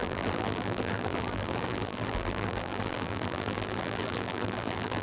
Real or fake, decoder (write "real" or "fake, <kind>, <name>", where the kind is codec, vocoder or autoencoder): fake, vocoder, BigVGAN v2